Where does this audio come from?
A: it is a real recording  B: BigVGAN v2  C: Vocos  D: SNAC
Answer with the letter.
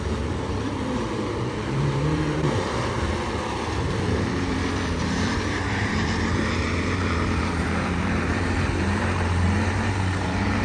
B